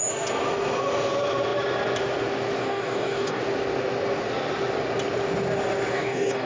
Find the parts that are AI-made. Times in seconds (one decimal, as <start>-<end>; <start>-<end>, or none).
2.6-3.4; 5.9-6.5